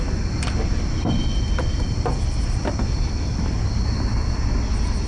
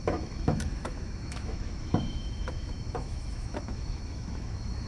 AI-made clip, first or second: second